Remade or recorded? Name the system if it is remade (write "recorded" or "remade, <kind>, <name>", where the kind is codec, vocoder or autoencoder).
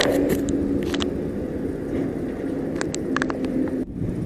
recorded